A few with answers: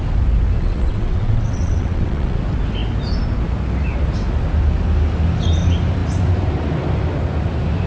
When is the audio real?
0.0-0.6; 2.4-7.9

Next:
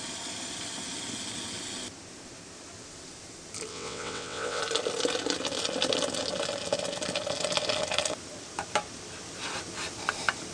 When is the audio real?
0.0-3.7; 4.6-10.5

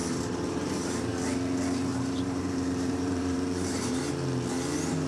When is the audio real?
1.1-1.9; 4.0-5.1

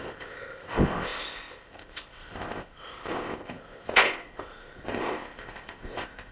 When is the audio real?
none

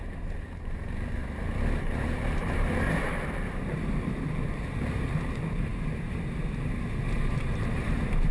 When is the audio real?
none

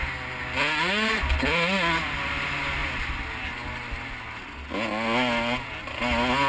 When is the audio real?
0.0-6.5

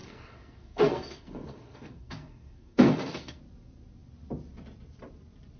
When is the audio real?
3.4-5.6